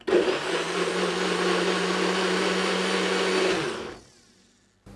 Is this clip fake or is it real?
real